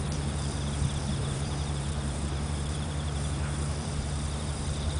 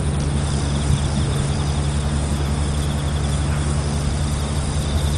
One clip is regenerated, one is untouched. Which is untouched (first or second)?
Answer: second